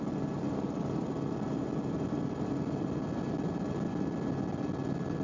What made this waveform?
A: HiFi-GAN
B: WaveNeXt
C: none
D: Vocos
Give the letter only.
C